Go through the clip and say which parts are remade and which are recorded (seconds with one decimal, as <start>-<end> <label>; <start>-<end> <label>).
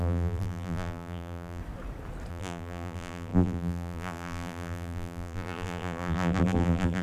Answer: 0.0-1.6 remade; 1.6-2.3 recorded; 2.3-7.0 remade